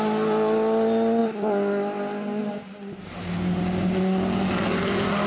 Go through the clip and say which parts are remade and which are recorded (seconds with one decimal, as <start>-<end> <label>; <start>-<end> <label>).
0.0-5.3 recorded